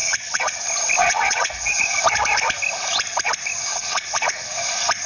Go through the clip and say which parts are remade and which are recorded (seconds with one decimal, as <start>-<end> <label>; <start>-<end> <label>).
0.0-0.6 remade; 0.6-1.0 recorded; 1.0-1.8 remade; 1.8-3.7 recorded; 3.7-4.5 remade; 4.5-5.1 recorded